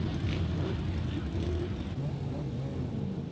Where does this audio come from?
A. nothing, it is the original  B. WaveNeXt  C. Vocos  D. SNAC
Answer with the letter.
A